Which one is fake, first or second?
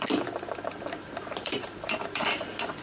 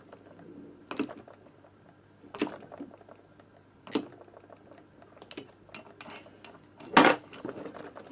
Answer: first